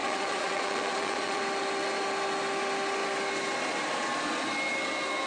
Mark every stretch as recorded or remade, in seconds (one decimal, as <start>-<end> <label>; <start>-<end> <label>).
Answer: 0.0-1.4 remade; 1.4-5.3 recorded